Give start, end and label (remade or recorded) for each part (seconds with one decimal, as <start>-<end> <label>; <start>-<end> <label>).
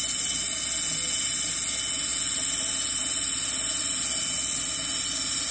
0.0-5.5 recorded